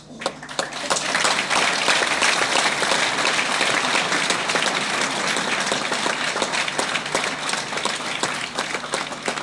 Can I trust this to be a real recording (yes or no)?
yes